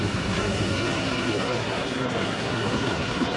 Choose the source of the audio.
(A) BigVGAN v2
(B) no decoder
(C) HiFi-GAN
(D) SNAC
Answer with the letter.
D